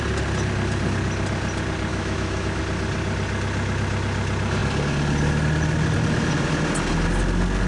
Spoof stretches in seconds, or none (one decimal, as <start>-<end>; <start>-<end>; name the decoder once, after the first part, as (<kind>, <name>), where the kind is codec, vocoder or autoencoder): 1.9-2.6 (autoencoder, DAC-VAE)